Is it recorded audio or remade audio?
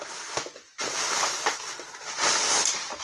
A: recorded